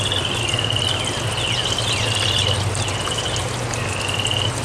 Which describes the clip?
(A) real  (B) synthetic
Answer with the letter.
A